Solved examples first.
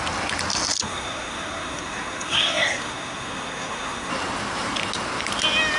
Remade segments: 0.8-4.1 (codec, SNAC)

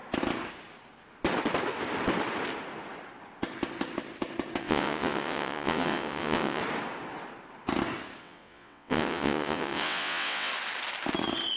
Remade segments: 4.6-6.6 (vocoder, WaveNeXt); 8.2-10.5

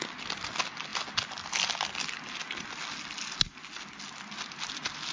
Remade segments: none